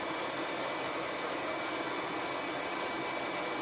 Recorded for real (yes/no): yes